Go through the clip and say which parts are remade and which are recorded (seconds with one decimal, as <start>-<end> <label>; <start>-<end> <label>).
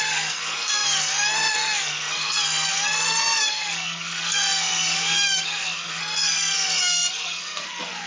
0.0-8.1 remade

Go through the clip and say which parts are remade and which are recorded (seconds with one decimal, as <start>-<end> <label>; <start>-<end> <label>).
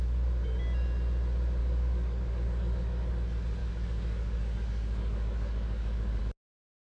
0.0-1.6 recorded; 1.6-3.1 remade; 3.1-3.6 recorded; 3.6-6.2 remade; 6.2-6.9 recorded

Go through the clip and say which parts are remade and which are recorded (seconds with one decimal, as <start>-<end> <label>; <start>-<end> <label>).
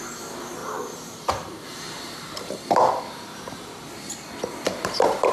0.0-0.6 recorded; 0.6-3.8 remade; 3.8-4.7 recorded; 4.7-5.3 remade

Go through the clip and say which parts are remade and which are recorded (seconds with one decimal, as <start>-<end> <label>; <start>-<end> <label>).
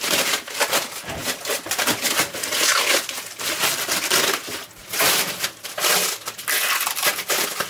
0.0-7.7 recorded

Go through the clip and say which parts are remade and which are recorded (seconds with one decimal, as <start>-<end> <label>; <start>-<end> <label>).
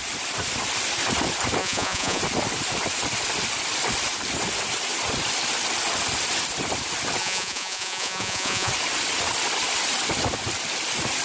0.0-1.6 recorded; 1.6-2.2 remade; 2.2-7.2 recorded; 7.2-8.7 remade; 8.7-11.2 recorded